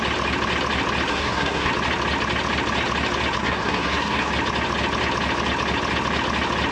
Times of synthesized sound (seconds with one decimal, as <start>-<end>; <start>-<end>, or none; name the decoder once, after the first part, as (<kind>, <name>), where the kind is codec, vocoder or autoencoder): 1.1-1.7 (codec, SNAC); 3.4-4.3